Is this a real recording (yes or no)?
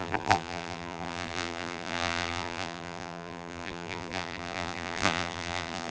no